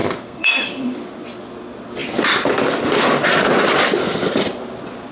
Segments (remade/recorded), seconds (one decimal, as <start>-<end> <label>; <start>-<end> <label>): 0.0-0.7 remade; 0.7-5.1 recorded